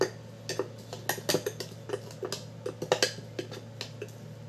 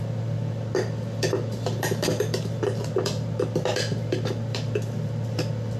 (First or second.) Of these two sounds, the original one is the first